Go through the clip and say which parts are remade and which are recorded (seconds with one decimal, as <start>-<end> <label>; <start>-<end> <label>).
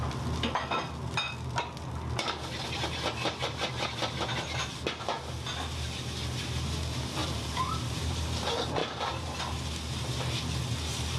0.0-7.2 recorded; 7.2-8.2 remade; 8.2-8.8 recorded; 8.8-9.4 remade; 9.4-11.2 recorded